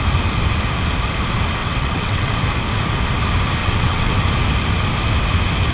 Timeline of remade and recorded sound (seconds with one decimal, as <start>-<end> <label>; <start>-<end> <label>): 0.0-1.6 recorded; 1.6-2.3 remade; 2.3-3.6 recorded; 3.6-4.1 remade; 4.1-5.7 recorded